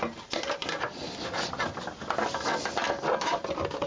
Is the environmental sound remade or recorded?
recorded